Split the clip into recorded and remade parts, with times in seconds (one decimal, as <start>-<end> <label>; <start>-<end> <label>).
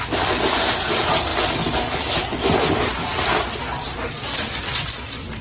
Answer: 0.0-5.4 recorded